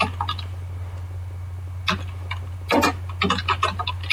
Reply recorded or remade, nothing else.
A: recorded